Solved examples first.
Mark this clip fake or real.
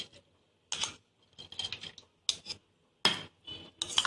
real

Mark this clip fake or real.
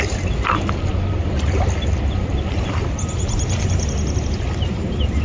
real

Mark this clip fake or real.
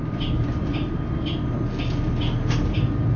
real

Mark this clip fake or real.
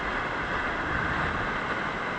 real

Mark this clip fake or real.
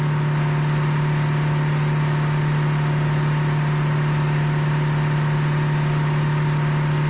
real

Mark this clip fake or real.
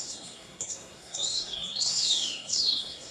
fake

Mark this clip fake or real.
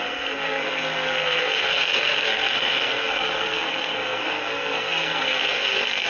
fake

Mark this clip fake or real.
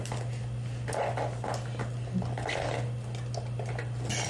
real